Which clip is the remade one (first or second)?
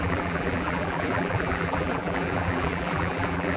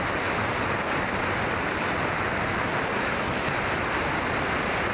first